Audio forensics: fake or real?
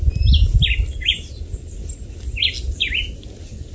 real